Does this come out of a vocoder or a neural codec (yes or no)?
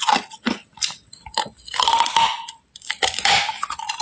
no